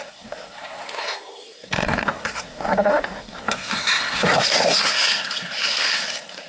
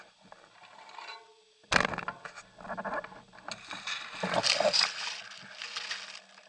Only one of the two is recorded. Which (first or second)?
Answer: second